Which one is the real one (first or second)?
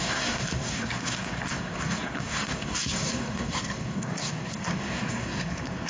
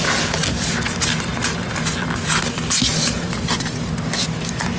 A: second